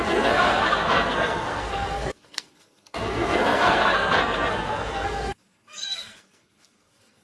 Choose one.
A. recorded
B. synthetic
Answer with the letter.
B